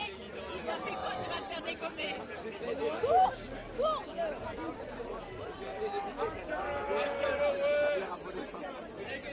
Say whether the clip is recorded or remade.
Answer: recorded